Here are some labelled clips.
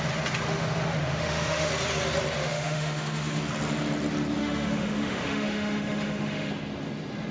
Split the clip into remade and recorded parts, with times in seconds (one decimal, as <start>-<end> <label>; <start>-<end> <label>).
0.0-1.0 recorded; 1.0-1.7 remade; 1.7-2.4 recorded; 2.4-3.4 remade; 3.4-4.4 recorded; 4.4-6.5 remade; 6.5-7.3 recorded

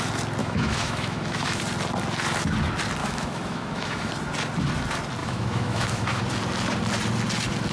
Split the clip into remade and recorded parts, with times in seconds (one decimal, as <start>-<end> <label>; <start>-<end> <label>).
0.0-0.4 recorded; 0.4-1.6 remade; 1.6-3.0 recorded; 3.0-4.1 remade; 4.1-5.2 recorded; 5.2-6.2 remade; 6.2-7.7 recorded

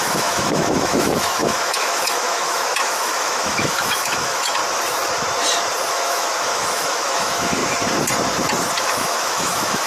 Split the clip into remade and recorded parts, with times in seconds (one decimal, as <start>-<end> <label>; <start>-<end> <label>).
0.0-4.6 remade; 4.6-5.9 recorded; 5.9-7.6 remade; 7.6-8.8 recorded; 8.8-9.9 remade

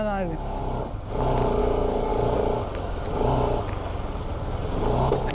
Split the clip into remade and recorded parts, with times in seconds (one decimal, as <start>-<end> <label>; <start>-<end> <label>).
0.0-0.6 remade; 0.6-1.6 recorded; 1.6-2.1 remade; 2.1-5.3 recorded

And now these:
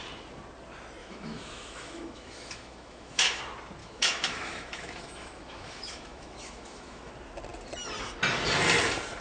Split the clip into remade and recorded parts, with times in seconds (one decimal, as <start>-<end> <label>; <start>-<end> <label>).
0.0-1.0 recorded; 1.0-3.4 remade; 3.4-3.8 recorded; 3.8-7.1 remade; 7.1-9.2 recorded